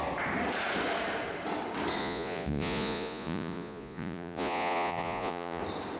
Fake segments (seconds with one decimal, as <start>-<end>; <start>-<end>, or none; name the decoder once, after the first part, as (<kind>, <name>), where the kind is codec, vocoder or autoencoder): 2.0-5.6 (vocoder, Vocos)

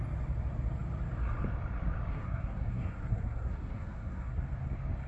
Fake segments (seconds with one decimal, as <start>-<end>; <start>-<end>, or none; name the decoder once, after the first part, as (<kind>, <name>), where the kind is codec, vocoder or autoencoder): 2.1-4.4 (codec, SNAC)

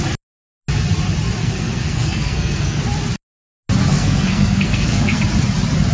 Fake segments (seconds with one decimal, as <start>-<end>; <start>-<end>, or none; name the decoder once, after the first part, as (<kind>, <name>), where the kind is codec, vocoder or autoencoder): 1.4-2.8 (codec, SNAC); 3.8-5.2